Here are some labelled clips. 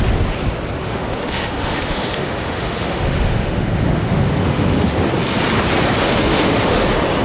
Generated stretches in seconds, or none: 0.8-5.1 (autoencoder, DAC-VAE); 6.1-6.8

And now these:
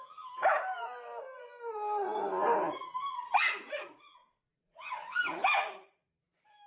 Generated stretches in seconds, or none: 3.2-5.2 (vocoder, Vocos)

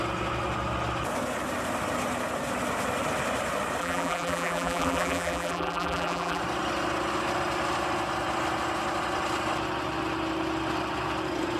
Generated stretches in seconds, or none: 3.8-6.4 (vocoder, BigVGAN v2)